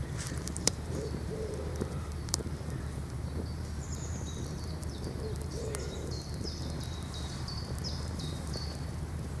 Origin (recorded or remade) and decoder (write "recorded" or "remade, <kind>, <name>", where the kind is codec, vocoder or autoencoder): remade, vocoder, BigVGAN v2